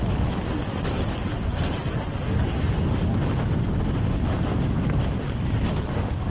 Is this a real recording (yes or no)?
yes